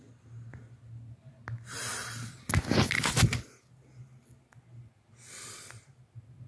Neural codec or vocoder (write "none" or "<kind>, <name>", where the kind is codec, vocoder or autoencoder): none